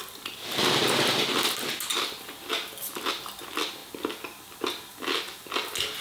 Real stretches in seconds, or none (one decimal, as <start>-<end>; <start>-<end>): 0.0-6.0

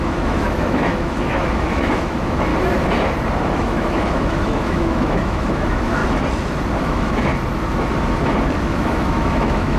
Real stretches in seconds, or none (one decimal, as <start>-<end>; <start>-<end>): 2.5-3.5; 6.0-6.8; 7.3-8.7

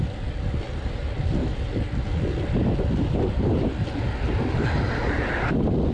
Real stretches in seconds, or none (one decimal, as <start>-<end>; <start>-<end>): 0.0-5.9

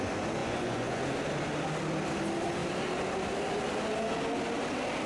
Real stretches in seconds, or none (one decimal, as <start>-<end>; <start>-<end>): 0.0-0.4; 1.0-5.1

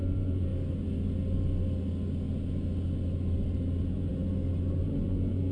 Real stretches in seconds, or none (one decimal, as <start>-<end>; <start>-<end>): 0.5-3.8; 4.2-4.8

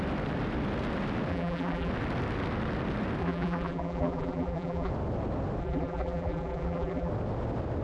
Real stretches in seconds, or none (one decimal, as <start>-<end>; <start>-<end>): 0.0-1.3; 1.9-3.2; 4.9-5.6; 7.1-7.8